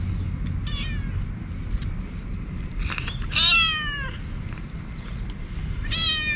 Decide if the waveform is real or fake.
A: real